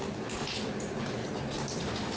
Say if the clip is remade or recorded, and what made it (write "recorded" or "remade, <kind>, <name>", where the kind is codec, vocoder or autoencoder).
recorded